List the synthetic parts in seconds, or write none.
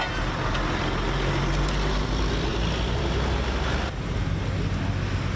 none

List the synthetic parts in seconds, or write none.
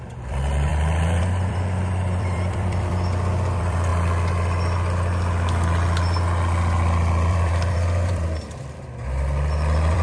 0.0-0.7 (vocoder, BigVGAN v2); 1.2-3.9; 7.3-10.0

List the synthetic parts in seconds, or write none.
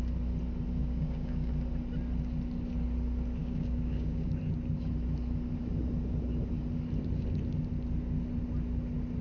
0.8-1.5 (codec, DAC); 3.4-4.4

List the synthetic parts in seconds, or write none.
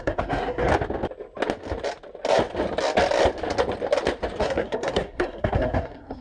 0.0-0.7 (codec, SNAC); 4.4-6.2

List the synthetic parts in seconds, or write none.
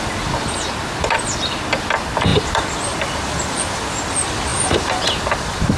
2.3-3.6 (vocoder, BigVGAN v2); 4.5-5.8